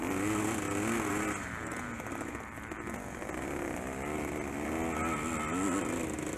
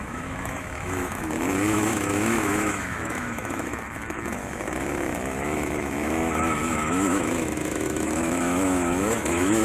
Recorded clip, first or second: first